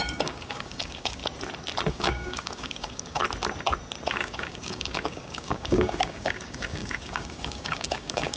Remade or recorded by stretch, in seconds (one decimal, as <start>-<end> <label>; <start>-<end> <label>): 0.0-1.2 remade; 1.2-1.9 recorded; 1.9-3.2 remade; 3.2-4.1 recorded; 4.1-8.4 remade